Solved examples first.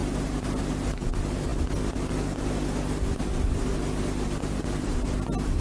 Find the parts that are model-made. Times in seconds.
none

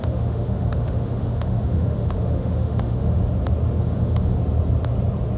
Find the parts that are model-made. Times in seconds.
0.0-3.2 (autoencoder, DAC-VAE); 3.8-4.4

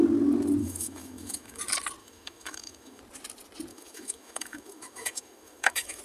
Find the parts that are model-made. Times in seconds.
0.6-1.6 (autoencoder, DAC-VAE); 2.0-3.0; 3.7-6.0